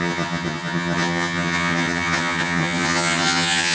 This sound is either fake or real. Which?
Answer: fake